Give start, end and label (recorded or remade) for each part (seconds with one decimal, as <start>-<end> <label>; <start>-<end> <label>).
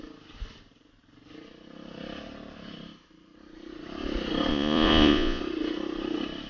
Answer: 0.0-4.5 recorded; 4.5-5.4 remade; 5.4-6.5 recorded